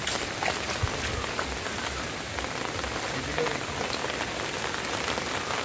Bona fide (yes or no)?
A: yes